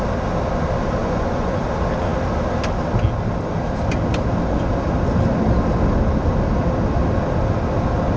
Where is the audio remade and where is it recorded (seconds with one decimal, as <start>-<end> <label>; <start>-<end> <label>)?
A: 0.0-1.0 recorded; 1.0-1.6 remade; 1.6-8.2 recorded